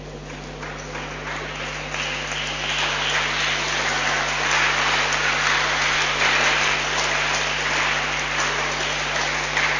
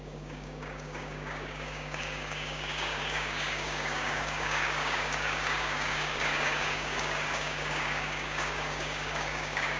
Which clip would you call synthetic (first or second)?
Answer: second